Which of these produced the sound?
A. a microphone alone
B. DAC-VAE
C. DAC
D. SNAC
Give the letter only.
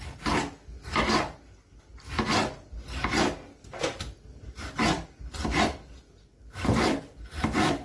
A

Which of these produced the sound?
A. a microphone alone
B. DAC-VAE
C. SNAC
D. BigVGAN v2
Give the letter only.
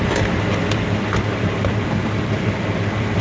D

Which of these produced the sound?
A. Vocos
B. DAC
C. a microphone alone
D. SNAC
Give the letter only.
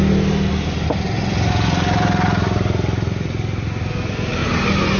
C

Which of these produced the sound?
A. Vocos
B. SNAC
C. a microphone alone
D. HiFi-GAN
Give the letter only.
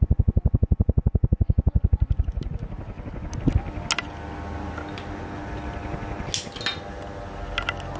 C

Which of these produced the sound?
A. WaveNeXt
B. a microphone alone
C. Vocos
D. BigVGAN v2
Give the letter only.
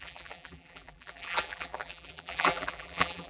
D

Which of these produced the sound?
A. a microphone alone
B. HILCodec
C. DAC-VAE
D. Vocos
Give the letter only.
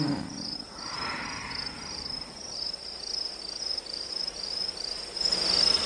A